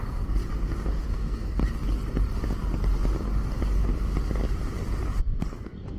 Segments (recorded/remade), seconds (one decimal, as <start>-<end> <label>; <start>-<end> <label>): 0.0-0.4 remade; 0.4-0.9 recorded; 0.9-1.6 remade; 1.6-5.2 recorded; 5.2-6.0 remade